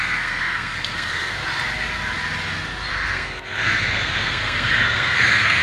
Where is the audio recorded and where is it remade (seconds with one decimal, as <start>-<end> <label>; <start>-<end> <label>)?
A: 0.0-1.4 remade; 1.4-2.9 recorded; 2.9-5.6 remade